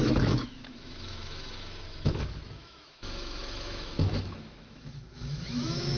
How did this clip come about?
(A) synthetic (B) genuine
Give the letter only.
A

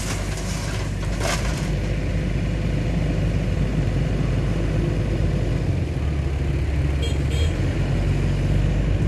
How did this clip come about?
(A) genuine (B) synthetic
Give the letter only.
A